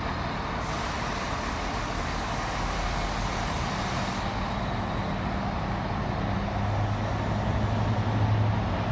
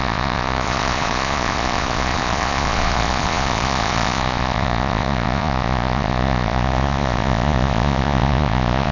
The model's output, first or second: second